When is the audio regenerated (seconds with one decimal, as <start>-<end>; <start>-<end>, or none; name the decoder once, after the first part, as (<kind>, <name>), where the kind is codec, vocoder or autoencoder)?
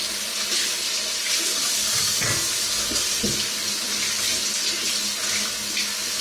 none